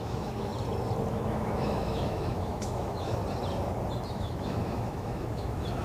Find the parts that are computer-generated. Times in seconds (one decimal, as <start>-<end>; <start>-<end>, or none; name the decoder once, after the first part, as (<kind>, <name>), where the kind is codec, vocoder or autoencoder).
0.0-0.5 (autoencoder, DAC-VAE); 1.1-3.2; 4.1-5.8